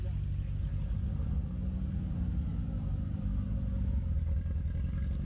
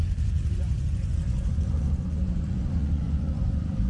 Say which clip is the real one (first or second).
first